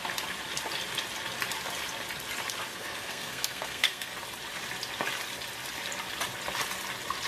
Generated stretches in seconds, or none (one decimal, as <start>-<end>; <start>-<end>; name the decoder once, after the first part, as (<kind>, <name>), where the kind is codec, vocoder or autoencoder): 2.7-4.1 (codec, SNAC)